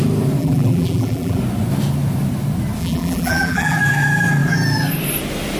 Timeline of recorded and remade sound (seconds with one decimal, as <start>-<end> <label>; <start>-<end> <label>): 0.0-0.4 recorded; 0.4-1.4 remade; 1.4-2.8 recorded; 2.8-3.8 remade; 3.8-5.6 recorded